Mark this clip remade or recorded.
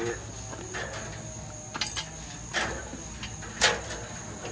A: recorded